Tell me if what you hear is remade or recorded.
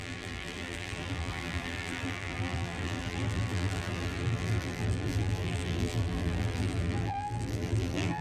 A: remade